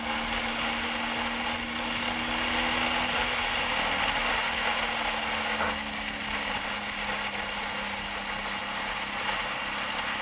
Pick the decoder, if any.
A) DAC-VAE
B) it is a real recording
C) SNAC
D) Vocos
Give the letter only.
B